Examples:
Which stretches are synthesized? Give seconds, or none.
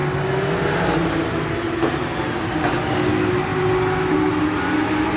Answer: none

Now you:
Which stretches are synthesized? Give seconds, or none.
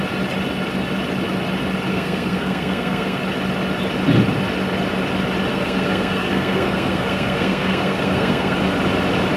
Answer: 1.9-3.2 (codec, SNAC); 5.5-8.6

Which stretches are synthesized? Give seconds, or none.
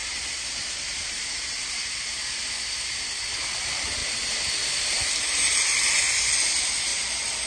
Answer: 0.0-1.8 (vocoder, BigVGAN v2); 4.0-6.1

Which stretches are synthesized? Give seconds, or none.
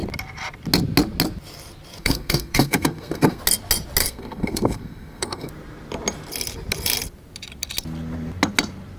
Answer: 2.0-3.4 (codec, SNAC); 4.0-5.5